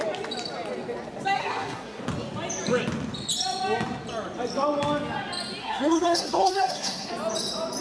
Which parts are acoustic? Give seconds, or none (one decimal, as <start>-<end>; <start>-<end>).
0.0-1.4; 2.0-5.6; 7.1-7.8